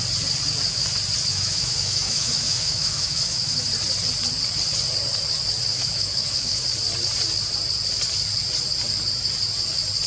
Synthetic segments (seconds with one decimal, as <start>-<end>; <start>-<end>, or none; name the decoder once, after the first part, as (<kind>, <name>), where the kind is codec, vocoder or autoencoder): 1.3-3.6 (autoencoder, DAC-VAE); 5.7-6.6